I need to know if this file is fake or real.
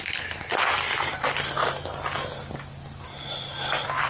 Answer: real